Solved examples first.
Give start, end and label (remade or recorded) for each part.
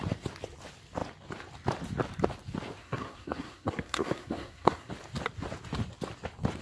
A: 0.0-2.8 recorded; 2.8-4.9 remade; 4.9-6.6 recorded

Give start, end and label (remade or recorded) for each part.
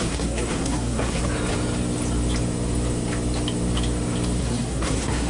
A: 0.0-1.2 remade; 1.2-4.4 recorded; 4.4-5.3 remade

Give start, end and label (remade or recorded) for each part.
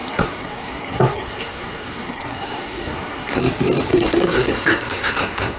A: 0.0-3.4 remade; 3.4-3.9 recorded; 3.9-5.6 remade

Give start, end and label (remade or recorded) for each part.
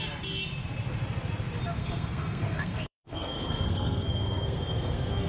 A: 0.0-1.8 recorded; 1.8-5.3 remade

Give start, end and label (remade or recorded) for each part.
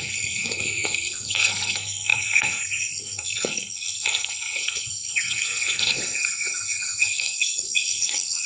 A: 0.0-8.5 remade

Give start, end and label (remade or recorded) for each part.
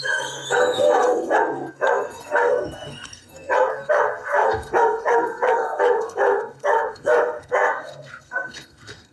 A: 0.0-9.1 remade